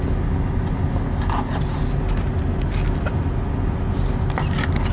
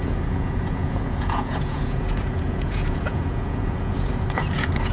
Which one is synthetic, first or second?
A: second